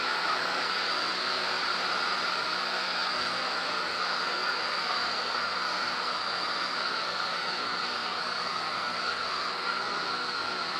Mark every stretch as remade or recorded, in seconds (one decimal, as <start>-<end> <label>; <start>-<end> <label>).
0.0-1.6 remade; 1.6-2.3 recorded; 2.3-10.8 remade